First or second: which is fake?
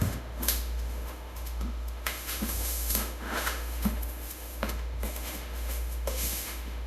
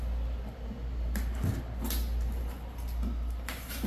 first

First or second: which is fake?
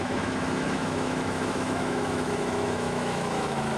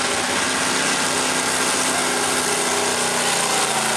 first